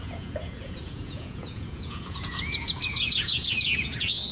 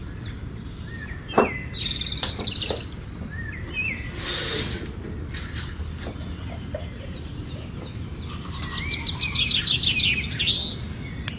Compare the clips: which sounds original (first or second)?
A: second